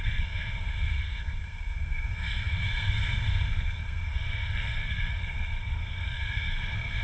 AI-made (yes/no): yes